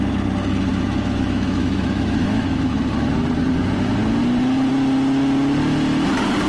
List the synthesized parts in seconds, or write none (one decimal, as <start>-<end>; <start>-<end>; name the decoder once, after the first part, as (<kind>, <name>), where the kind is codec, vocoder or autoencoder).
0.7-2.8 (autoencoder, DAC-VAE)